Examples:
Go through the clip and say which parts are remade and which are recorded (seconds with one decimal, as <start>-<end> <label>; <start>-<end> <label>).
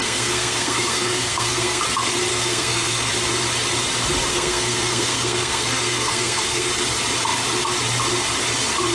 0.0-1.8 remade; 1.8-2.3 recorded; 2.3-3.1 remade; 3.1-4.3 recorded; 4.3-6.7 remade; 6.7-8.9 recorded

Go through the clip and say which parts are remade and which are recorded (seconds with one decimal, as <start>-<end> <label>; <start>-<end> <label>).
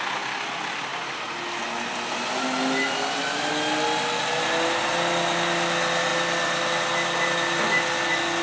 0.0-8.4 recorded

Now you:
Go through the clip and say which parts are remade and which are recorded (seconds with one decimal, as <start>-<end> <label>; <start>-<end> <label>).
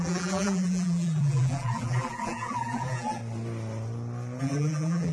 0.0-3.2 remade; 3.2-4.4 recorded; 4.4-5.1 remade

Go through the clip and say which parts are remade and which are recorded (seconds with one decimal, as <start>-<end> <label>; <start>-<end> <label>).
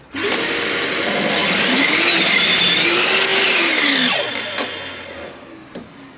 0.0-1.4 recorded; 1.4-1.9 remade; 1.9-6.2 recorded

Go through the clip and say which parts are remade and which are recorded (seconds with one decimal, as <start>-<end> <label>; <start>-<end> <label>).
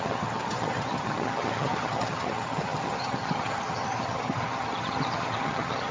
0.0-5.9 remade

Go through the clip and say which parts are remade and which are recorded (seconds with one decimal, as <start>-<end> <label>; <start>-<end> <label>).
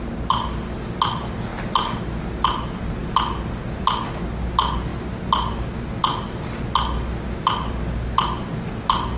0.0-9.2 recorded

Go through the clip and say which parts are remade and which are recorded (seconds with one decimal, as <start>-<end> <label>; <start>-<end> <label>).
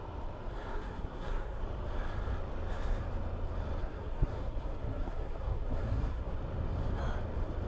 0.0-0.7 recorded; 0.7-1.6 remade; 1.6-3.8 recorded; 3.8-6.4 remade; 6.4-7.7 recorded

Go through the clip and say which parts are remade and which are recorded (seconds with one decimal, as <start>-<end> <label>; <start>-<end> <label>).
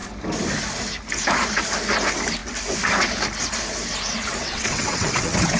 0.0-4.4 recorded; 4.4-5.6 remade